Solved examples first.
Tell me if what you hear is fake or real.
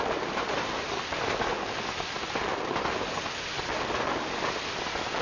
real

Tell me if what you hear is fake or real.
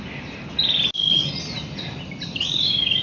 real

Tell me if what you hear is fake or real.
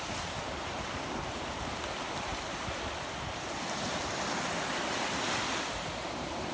real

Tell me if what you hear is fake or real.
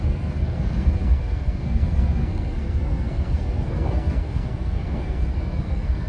fake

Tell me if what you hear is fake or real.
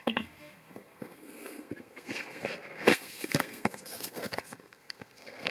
fake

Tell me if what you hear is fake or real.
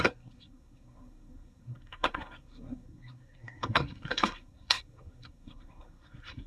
fake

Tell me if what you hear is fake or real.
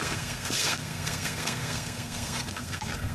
fake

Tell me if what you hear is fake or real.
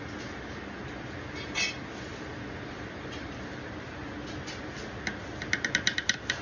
real